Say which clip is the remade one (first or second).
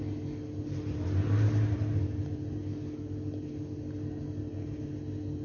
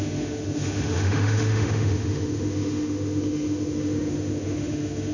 second